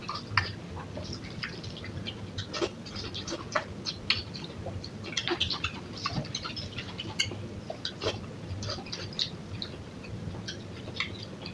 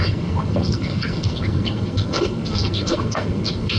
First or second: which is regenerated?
second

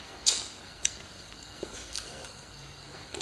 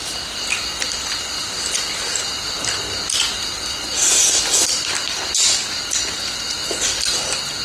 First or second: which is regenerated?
first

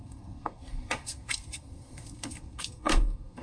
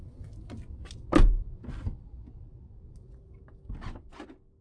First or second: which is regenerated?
first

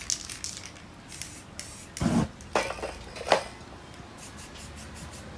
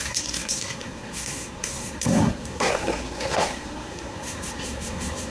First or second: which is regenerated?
second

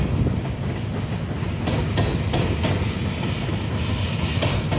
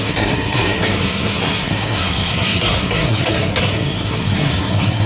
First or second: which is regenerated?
second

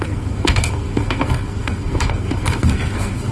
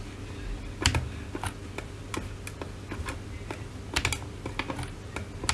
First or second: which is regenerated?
first